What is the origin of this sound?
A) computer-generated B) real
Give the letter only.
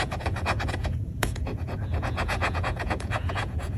A